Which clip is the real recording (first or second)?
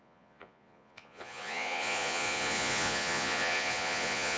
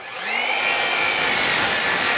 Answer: second